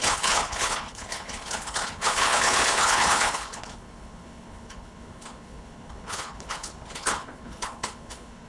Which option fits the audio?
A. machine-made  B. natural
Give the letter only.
A